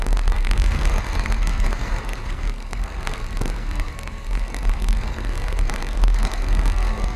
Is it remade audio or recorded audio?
remade